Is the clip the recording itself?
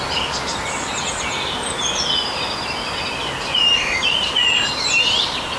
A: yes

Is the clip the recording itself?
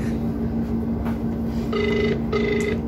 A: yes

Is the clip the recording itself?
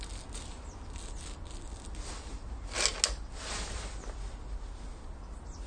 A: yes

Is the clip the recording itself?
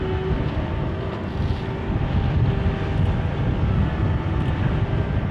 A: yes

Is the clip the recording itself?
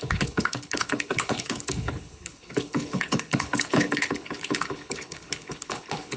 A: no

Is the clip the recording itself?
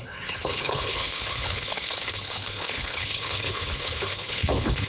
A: no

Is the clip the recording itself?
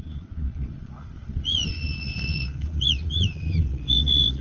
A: no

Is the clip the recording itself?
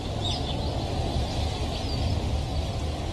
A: yes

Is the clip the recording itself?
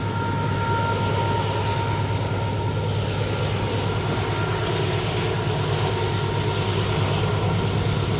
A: yes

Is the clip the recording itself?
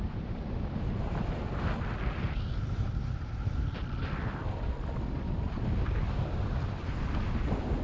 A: yes